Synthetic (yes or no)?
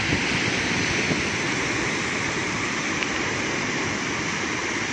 yes